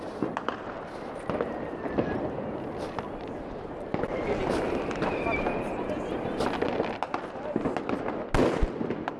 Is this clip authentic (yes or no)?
yes